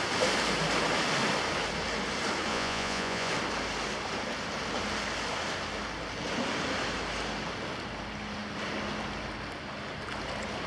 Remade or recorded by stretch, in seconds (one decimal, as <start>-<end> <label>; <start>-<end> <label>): 0.0-2.5 recorded; 2.5-3.3 remade; 3.3-10.7 recorded